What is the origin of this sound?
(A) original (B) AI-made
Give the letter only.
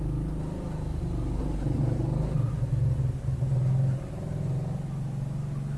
A